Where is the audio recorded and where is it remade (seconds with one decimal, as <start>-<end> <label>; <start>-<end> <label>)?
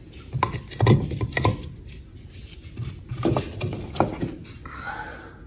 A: 0.0-5.5 recorded